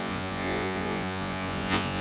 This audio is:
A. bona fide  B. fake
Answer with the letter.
B